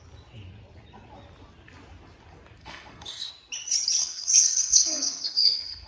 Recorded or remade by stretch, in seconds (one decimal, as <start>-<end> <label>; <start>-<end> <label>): 0.0-2.6 recorded; 2.6-3.3 remade; 3.3-4.0 recorded; 4.0-5.9 remade